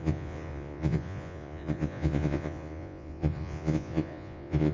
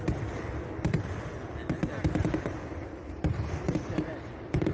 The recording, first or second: second